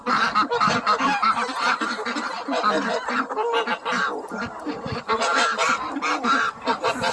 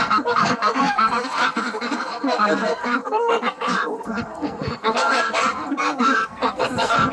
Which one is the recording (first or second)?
first